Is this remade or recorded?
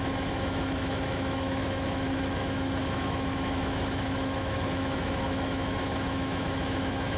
remade